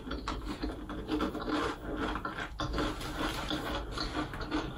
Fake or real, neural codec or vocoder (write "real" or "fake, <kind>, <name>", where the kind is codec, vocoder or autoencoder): real